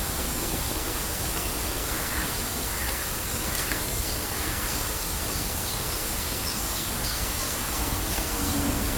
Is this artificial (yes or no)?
yes